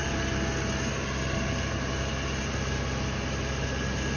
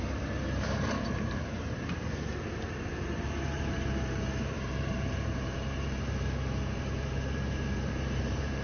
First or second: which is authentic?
first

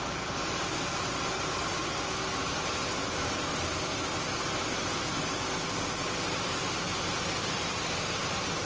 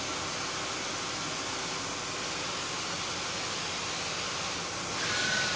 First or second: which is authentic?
second